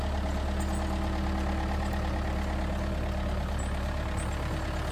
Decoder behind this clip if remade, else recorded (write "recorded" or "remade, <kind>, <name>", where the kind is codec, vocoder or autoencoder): recorded